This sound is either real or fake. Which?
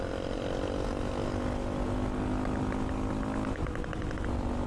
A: real